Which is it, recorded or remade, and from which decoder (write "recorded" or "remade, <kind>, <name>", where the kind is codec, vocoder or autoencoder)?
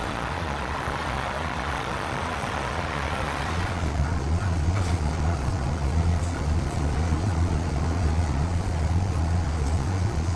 remade, vocoder, Vocos